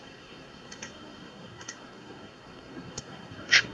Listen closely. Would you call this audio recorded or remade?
remade